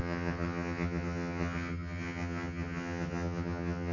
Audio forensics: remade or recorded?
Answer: remade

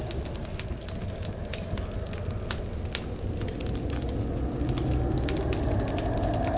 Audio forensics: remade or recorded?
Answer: recorded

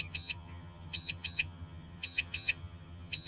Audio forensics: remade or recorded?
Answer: remade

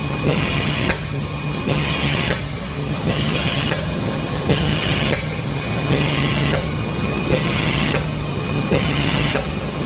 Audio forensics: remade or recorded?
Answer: remade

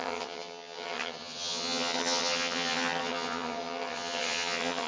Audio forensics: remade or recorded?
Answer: remade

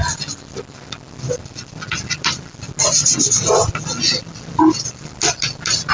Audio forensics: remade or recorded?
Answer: recorded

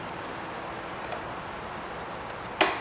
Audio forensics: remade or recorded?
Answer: recorded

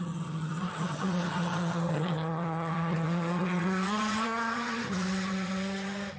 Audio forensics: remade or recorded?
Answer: remade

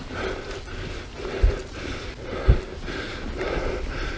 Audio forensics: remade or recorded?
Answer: recorded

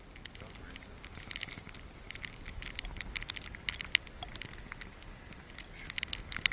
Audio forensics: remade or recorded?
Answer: recorded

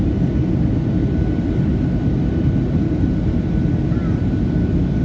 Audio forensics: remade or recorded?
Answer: recorded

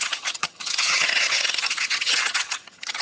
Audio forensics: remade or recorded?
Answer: remade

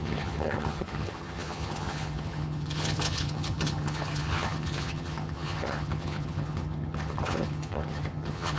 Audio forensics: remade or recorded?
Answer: remade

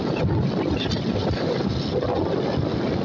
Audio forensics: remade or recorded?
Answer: recorded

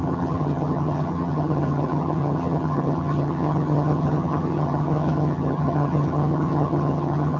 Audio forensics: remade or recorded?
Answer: remade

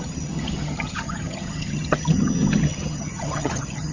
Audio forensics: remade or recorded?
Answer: remade